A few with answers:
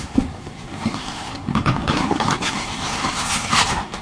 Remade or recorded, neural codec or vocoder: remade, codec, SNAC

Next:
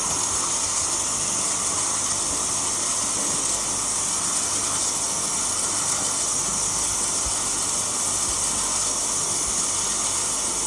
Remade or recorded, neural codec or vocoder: recorded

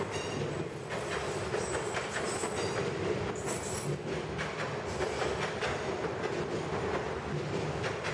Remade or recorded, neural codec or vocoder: recorded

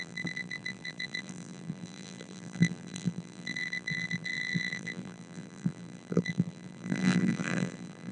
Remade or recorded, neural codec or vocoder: remade, vocoder, BigVGAN v2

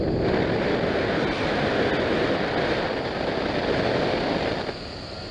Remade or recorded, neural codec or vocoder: recorded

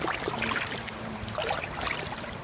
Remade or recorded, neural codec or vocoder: recorded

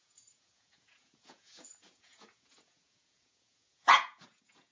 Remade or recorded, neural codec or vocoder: remade, vocoder, Vocos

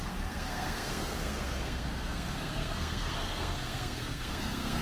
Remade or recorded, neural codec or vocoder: remade, codec, SNAC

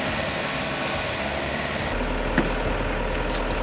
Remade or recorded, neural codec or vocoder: recorded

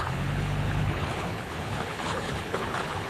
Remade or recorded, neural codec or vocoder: remade, codec, HILCodec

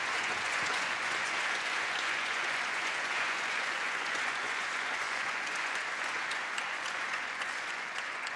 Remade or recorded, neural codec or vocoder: remade, vocoder, Vocos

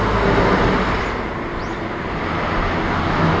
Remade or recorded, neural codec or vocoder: recorded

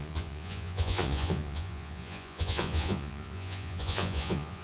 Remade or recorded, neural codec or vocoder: remade, vocoder, Vocos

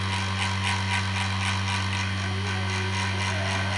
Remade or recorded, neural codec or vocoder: recorded